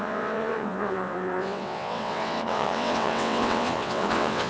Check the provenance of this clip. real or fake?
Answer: fake